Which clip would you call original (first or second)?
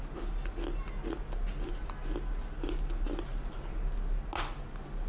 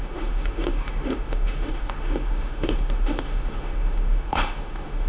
first